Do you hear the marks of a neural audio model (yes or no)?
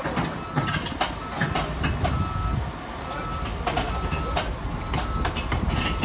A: no